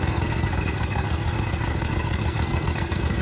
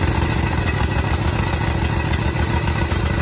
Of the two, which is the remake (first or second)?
first